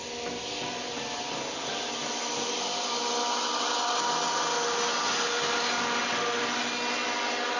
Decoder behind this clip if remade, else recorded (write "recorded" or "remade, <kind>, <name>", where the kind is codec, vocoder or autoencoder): recorded